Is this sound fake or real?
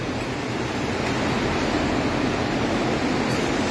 real